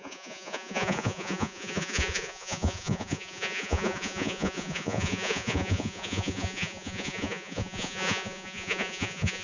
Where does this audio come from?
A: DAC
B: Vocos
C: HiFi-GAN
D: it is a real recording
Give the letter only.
B